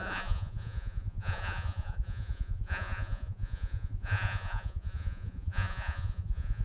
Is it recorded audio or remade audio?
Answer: remade